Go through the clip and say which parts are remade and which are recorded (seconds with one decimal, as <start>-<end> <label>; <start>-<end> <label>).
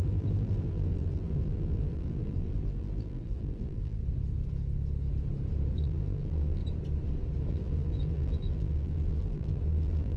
0.0-4.0 remade; 4.0-5.7 recorded; 5.7-6.6 remade; 6.6-7.5 recorded; 7.5-10.2 remade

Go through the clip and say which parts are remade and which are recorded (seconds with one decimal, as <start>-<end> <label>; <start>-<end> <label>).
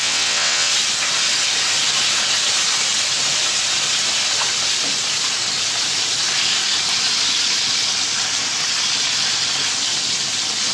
0.0-0.7 remade; 0.7-10.7 recorded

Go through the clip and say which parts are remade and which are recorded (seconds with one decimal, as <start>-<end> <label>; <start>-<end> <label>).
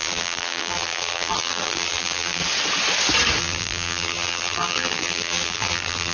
0.0-2.4 remade; 2.4-3.4 recorded; 3.4-6.1 remade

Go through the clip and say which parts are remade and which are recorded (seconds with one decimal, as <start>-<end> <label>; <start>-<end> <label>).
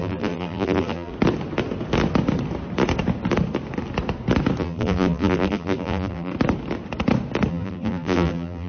0.0-1.1 remade; 1.1-4.6 recorded; 4.6-6.3 remade; 6.3-7.5 recorded; 7.5-8.7 remade